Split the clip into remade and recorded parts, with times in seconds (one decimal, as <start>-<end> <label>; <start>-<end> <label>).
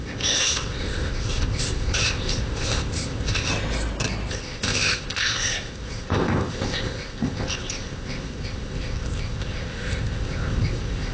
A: 0.0-3.5 remade; 3.5-4.3 recorded; 4.3-11.1 remade